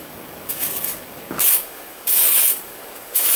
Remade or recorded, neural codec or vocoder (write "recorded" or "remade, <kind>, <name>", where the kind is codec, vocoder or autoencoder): remade, codec, DAC